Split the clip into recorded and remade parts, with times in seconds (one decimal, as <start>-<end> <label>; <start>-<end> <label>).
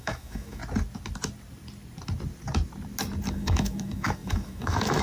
0.0-0.6 remade; 0.6-3.3 recorded; 3.3-5.0 remade